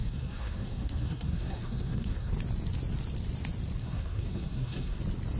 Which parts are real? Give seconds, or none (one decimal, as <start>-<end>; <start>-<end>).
2.3-3.8; 5.0-5.4